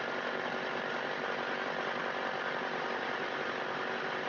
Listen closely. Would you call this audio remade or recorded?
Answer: recorded